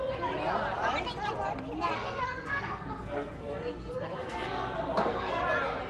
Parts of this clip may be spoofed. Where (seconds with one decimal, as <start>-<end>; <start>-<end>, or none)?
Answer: 1.9-5.4